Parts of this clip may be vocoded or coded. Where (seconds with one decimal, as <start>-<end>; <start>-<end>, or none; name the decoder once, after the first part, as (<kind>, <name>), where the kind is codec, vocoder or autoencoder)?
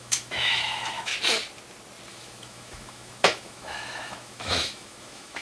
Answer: 0.0-1.1 (autoencoder, DAC-VAE); 2.1-5.4